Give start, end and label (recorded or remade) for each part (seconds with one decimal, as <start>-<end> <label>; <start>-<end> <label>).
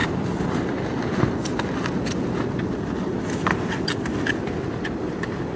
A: 0.0-5.6 recorded